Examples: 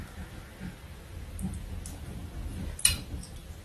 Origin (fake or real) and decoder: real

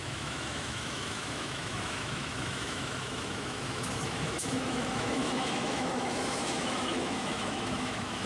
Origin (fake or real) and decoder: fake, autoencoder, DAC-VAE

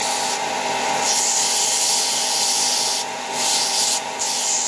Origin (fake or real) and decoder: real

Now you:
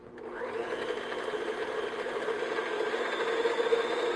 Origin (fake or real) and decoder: real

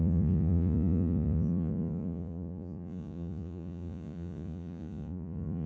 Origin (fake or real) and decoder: fake, vocoder, Vocos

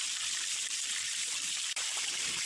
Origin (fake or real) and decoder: fake, vocoder, BigVGAN v2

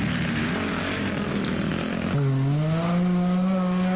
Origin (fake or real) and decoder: real